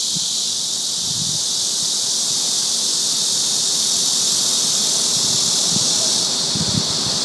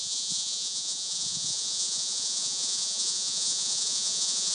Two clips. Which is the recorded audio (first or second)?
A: first